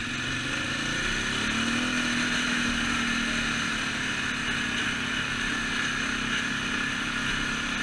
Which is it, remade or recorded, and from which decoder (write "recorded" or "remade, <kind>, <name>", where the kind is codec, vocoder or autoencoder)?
recorded